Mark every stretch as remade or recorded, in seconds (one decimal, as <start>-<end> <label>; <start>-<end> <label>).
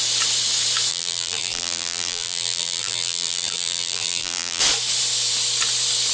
0.0-0.9 recorded; 0.9-4.6 remade; 4.6-6.1 recorded